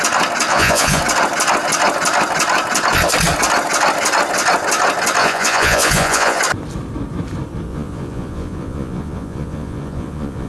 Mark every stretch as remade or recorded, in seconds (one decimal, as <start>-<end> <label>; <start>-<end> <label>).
0.0-0.5 recorded; 0.5-1.0 remade; 1.0-5.2 recorded; 5.2-6.4 remade; 6.4-7.7 recorded; 7.7-10.5 remade